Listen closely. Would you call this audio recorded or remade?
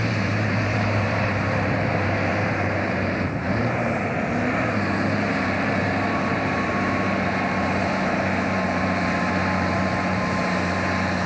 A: remade